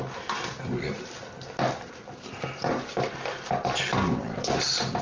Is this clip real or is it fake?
real